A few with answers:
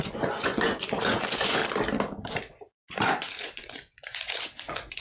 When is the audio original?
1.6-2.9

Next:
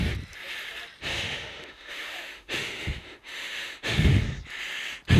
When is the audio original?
0.0-1.1; 4.2-5.2

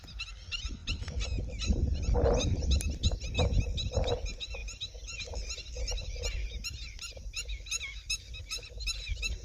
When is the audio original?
0.0-9.4

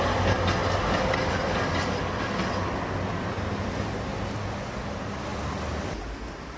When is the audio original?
0.0-6.6

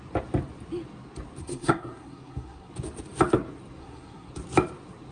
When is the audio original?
0.0-1.4; 2.7-3.8; 4.3-5.1

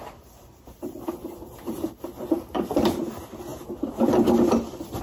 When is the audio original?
3.0-3.5; 4.3-5.0